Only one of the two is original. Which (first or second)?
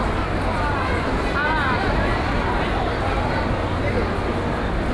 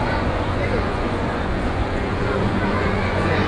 first